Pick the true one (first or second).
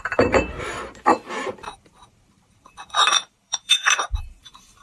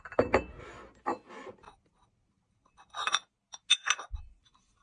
second